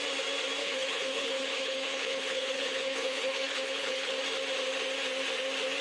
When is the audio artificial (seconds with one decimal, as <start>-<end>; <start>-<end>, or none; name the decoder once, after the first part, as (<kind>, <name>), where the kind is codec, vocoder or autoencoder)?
0.6-4.1 (codec, HILCodec)